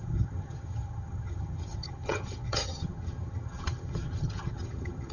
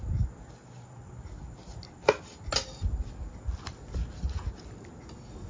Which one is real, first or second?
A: second